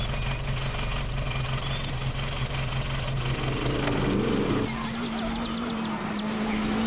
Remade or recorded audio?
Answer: recorded